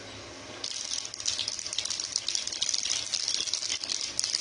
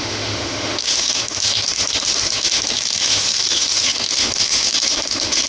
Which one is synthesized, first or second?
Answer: second